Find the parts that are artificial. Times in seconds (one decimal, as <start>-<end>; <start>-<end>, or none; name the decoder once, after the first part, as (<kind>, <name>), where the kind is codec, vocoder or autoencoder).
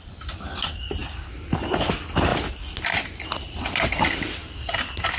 0.0-2.3 (vocoder, BigVGAN v2); 2.8-4.4